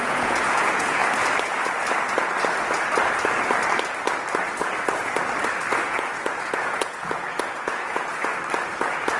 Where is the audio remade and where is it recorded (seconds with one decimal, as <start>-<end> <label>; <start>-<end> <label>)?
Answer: 0.0-1.0 remade; 1.0-5.8 recorded; 5.8-8.3 remade; 8.3-9.2 recorded